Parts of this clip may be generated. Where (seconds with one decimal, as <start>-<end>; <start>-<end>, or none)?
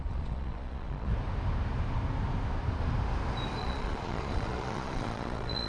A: 0.0-1.1; 3.6-5.7